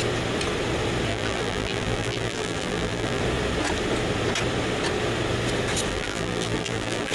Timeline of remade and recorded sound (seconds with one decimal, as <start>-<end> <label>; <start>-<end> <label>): 0.0-1.1 recorded; 1.1-3.2 remade; 3.2-5.9 recorded; 5.9-7.1 remade